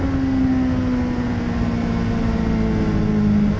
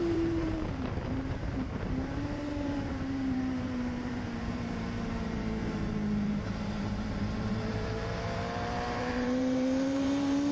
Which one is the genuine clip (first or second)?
first